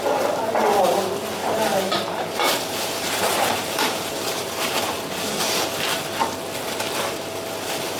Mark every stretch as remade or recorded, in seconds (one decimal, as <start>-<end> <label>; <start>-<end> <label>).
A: 0.0-1.4 recorded; 1.4-6.0 remade; 6.0-8.0 recorded